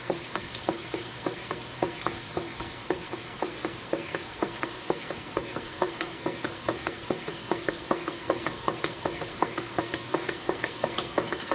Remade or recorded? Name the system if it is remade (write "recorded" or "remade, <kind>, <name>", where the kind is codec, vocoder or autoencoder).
remade, codec, SNAC